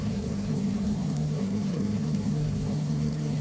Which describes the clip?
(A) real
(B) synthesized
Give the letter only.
B